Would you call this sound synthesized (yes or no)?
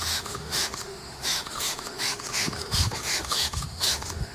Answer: yes